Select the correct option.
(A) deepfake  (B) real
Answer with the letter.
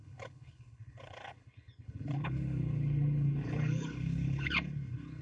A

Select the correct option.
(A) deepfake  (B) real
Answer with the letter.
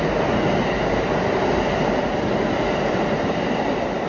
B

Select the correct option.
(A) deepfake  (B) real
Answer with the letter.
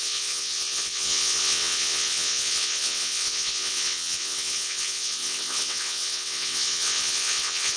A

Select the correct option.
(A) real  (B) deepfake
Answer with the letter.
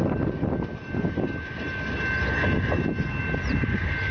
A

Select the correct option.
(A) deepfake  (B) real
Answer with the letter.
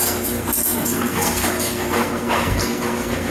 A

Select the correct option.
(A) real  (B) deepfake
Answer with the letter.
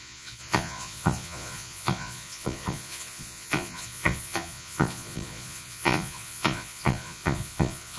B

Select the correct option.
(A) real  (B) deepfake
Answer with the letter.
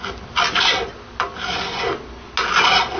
A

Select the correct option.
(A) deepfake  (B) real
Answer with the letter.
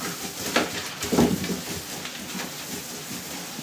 B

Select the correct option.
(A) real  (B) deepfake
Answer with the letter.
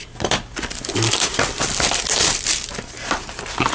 A